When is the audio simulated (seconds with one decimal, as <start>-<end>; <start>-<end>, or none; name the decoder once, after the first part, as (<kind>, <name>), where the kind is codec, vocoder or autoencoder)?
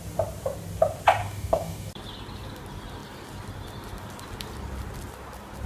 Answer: 1.2-1.9 (codec, DAC)